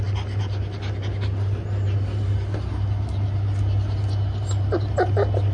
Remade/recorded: recorded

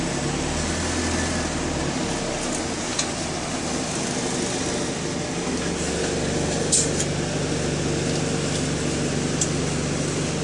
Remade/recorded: recorded